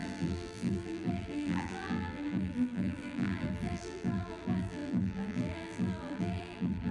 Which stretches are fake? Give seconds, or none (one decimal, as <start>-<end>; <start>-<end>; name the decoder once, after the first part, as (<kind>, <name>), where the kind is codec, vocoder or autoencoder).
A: 0.0-6.9 (vocoder, BigVGAN v2)